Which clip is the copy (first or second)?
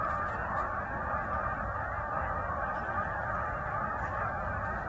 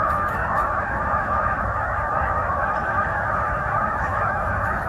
second